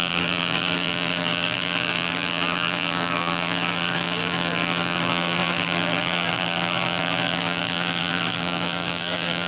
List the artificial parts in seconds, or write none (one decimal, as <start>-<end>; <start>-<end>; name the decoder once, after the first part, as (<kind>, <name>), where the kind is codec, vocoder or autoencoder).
0.0-9.5 (vocoder, BigVGAN v2)